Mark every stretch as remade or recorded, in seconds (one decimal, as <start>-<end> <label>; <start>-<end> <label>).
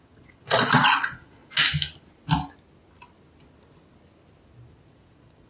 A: 0.0-1.4 remade; 1.4-4.7 recorded; 4.7-5.5 remade